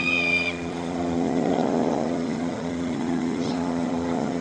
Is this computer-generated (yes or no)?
yes